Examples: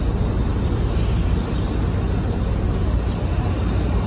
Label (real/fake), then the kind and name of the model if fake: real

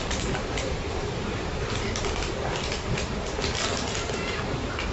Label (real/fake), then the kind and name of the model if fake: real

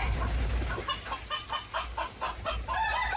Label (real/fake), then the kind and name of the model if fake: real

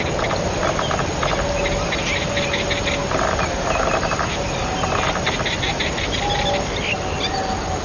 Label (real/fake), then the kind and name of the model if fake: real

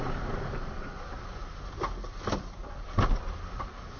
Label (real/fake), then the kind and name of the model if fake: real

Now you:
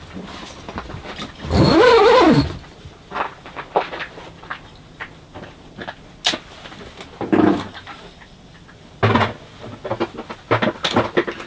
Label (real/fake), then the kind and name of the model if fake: real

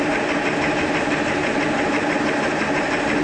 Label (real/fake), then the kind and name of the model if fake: real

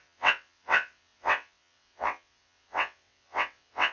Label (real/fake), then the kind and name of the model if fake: fake, vocoder, WaveNeXt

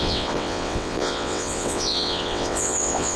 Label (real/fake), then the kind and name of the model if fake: fake, vocoder, WaveNeXt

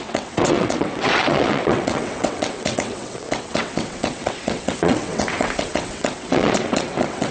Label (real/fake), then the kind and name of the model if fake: fake, vocoder, WaveNeXt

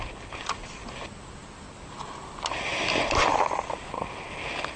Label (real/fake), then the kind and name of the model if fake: real